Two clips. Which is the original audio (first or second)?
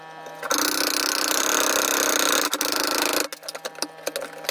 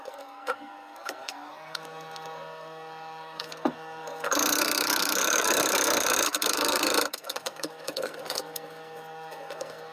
first